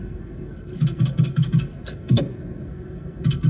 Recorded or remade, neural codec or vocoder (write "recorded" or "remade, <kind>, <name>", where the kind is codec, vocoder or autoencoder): remade, codec, SNAC